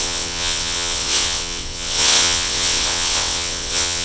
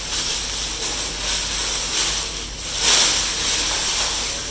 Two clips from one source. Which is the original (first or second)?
second